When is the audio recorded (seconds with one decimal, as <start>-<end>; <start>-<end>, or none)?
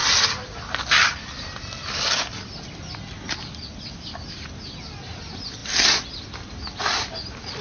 0.0-7.6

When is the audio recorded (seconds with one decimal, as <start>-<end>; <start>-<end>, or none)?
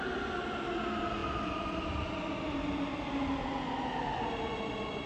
0.0-5.1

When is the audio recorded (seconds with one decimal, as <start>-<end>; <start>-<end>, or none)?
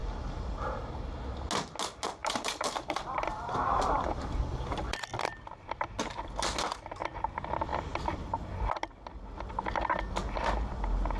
0.0-2.2; 5.1-7.7; 8.6-11.2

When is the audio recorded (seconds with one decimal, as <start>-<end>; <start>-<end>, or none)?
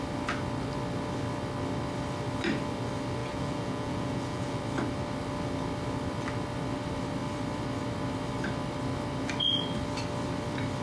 0.0-3.2; 4.6-10.8